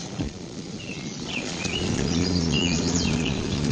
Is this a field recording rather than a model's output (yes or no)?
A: no